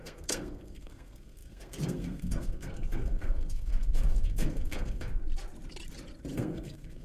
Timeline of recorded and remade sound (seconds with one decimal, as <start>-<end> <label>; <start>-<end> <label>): 0.0-5.2 remade; 5.2-6.3 recorded; 6.3-7.0 remade